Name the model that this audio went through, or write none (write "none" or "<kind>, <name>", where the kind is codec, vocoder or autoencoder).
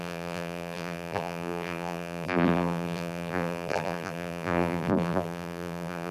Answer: vocoder, BigVGAN v2